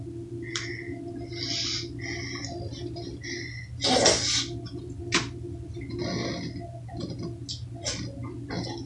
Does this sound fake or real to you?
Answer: real